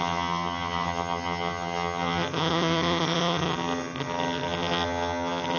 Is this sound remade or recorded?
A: remade